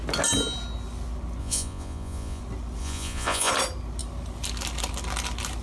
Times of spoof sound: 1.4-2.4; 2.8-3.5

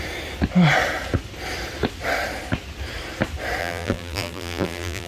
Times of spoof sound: 3.6-5.1

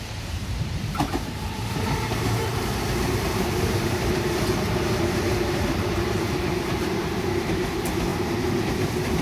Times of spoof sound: 0.0-8.1

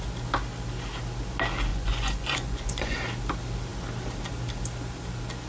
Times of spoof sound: 1.7-3.0